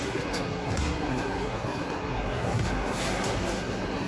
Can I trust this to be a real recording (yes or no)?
no